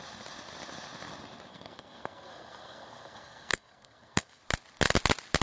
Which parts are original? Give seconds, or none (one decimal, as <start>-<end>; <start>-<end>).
0.0-1.5; 4.4-5.4